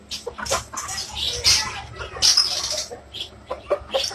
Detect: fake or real real